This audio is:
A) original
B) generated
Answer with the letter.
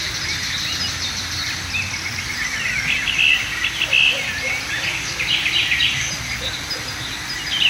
A